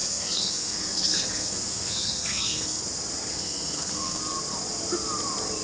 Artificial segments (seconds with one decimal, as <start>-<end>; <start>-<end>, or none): 0.0-2.8; 3.3-4.2